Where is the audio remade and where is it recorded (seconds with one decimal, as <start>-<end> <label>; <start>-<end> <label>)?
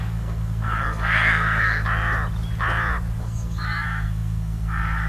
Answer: 0.0-1.8 remade; 1.8-3.2 recorded; 3.2-5.1 remade